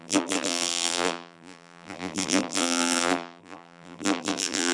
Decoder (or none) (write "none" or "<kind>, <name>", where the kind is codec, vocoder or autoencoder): vocoder, BigVGAN v2